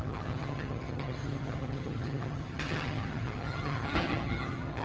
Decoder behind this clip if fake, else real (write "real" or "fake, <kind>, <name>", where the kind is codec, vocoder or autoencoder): fake, vocoder, HiFi-GAN